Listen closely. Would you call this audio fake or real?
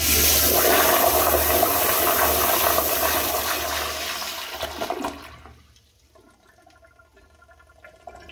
real